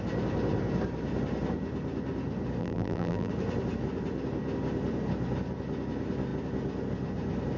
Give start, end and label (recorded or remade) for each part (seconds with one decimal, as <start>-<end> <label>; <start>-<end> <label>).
0.0-2.6 recorded; 2.6-3.3 remade; 3.3-7.6 recorded